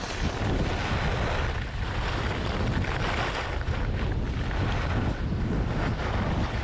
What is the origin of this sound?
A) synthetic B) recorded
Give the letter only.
B